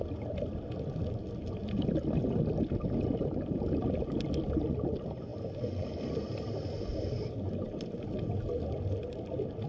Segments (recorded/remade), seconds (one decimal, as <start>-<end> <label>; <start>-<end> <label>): 0.0-9.7 recorded